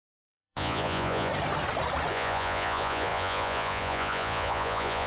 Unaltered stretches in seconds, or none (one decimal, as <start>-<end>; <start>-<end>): 1.3-2.1